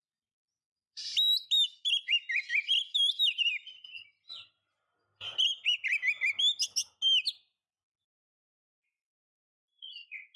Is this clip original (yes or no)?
yes